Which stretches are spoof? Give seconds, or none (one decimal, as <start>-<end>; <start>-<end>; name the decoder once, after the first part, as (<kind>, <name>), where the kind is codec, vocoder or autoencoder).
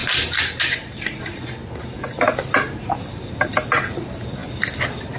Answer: none